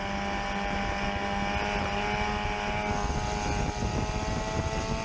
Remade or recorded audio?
recorded